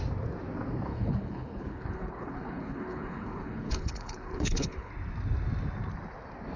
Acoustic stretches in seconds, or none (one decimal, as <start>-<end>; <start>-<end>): 0.0-0.9; 4.9-6.6